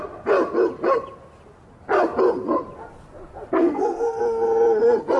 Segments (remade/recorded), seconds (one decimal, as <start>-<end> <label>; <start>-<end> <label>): 0.0-3.6 recorded; 3.6-4.2 remade; 4.2-5.2 recorded